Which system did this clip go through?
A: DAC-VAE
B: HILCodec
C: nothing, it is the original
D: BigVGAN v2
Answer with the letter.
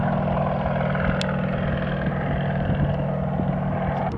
C